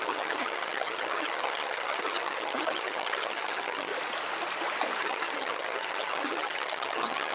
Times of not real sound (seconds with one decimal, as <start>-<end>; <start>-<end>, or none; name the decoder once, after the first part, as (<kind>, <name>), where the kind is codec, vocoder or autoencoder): 0.0-3.9 (vocoder, HiFi-GAN); 5.0-7.3

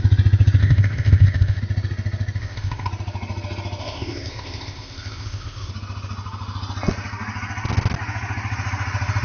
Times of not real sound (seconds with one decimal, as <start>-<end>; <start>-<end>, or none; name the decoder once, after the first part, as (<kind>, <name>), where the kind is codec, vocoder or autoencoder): 0.6-1.6 (codec, ZipCodec); 2.4-2.9; 3.8-5.7

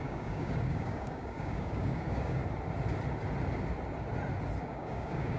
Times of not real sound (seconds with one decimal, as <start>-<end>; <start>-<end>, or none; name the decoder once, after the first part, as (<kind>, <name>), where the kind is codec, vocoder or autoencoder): 0.0-2.4 (codec, DAC); 4.6-5.4

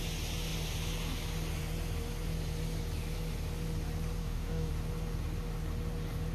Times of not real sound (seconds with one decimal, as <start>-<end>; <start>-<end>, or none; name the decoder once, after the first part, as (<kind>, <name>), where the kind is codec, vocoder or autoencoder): 4.2-4.7 (codec, DAC)

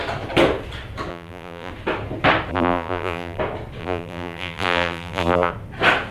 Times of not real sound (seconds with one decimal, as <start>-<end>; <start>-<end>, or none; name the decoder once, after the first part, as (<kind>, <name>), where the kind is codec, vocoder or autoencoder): 1.1-1.7 (vocoder, BigVGAN v2); 2.5-3.4; 3.8-5.5

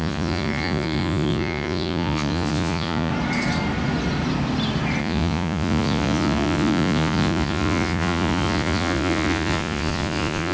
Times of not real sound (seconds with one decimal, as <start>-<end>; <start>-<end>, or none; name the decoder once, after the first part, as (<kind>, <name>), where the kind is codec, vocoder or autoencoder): 0.0-3.1 (vocoder, Vocos); 5.0-10.5

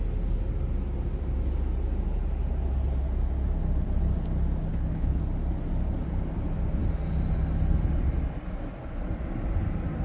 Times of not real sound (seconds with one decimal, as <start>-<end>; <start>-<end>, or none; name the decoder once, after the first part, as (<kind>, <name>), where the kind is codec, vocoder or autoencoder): 4.7-5.2 (codec, HILCodec)

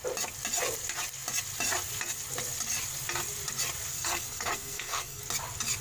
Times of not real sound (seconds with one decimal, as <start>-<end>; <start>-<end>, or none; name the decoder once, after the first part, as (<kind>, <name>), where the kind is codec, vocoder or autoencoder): 3.9-5.2 (codec, SNAC)